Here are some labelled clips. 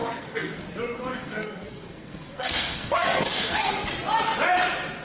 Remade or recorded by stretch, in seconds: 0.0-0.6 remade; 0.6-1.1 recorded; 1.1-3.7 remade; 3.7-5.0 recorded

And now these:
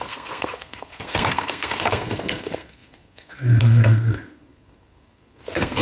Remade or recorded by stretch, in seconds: 0.0-5.8 remade